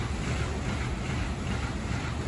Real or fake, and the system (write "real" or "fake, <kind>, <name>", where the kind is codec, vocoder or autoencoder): real